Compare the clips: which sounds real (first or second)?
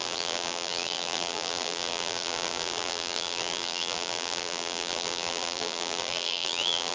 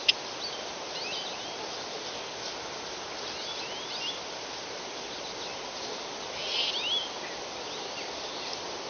second